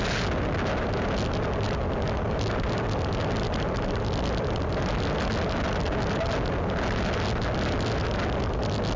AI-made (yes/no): no